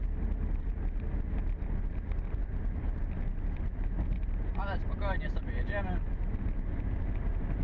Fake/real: real